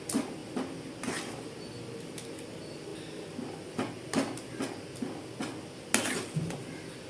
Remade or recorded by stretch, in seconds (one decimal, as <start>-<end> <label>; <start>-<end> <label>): 0.0-7.1 recorded